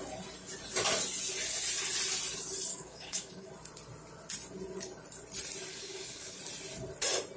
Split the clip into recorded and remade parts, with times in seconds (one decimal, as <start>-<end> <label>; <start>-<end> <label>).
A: 0.0-2.7 recorded; 2.7-3.5 remade; 3.5-5.7 recorded; 5.7-6.4 remade; 6.4-7.4 recorded